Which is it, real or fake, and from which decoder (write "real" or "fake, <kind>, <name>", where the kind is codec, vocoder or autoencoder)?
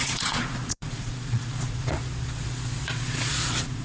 fake, vocoder, Vocos